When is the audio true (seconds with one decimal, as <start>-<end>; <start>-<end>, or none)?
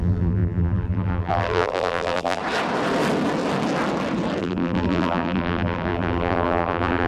2.4-4.4